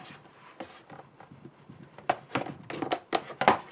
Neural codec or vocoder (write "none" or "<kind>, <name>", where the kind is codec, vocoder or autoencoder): none